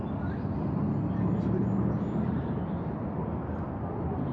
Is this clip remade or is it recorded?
recorded